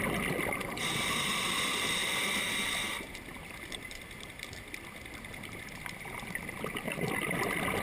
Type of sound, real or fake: fake